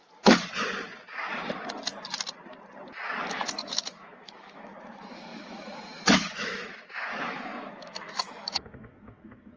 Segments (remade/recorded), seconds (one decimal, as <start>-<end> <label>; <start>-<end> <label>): 0.0-3.3 recorded; 3.3-9.6 remade